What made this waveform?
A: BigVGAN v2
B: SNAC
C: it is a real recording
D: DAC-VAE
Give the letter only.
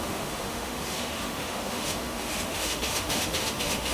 D